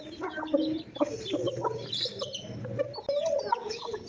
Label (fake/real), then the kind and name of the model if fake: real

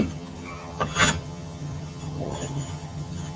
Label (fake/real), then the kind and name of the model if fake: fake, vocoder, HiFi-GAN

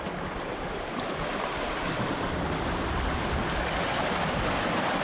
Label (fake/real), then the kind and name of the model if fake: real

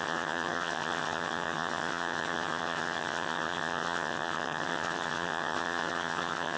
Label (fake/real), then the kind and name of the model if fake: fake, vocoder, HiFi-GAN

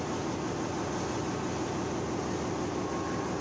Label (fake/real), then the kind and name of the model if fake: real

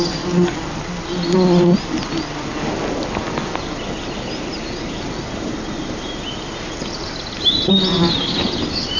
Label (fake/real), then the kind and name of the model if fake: real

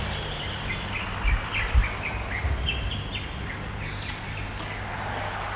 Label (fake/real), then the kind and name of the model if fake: real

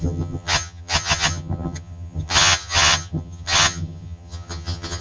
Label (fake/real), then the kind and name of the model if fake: fake, vocoder, HiFi-GAN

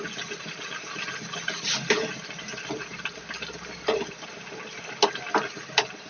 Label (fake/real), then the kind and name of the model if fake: real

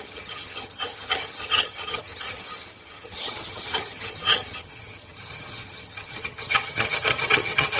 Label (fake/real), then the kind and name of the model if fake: fake, vocoder, HiFi-GAN